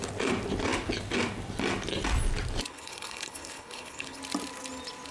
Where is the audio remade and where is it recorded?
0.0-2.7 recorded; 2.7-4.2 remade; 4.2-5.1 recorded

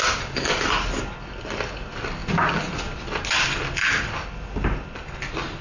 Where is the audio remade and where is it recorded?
0.0-5.6 recorded